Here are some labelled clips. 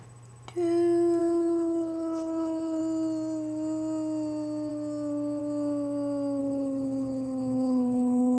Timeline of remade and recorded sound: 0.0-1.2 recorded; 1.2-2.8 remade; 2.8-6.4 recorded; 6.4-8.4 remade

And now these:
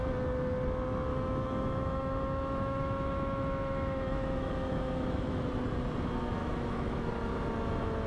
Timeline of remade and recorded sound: 0.0-1.1 recorded; 1.1-5.5 remade; 5.5-6.4 recorded; 6.4-7.1 remade; 7.1-8.1 recorded

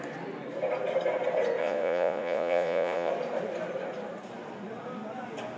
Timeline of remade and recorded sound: 0.0-1.6 recorded; 1.6-3.1 remade; 3.1-5.6 recorded

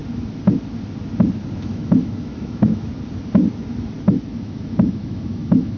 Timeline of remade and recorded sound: 0.0-1.6 recorded; 1.6-2.9 remade; 2.9-4.4 recorded; 4.4-5.8 remade

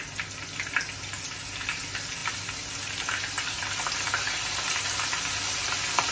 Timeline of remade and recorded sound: 0.0-6.1 recorded